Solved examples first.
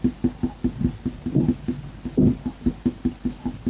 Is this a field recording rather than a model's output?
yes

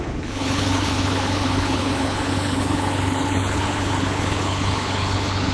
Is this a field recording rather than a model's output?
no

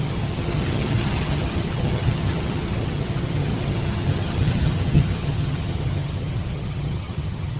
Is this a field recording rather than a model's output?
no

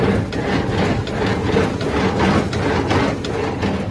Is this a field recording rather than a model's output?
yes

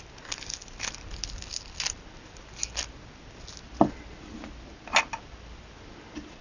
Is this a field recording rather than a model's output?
yes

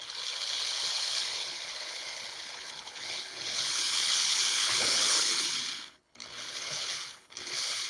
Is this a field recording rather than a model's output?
no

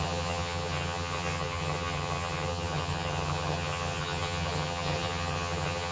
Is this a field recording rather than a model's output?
no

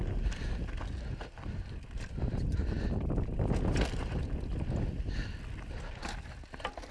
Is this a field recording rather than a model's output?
yes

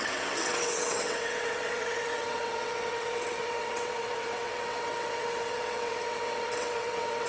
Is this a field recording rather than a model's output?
no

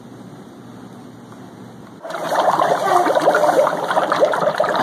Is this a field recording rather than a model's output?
yes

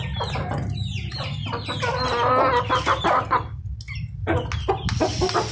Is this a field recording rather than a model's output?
yes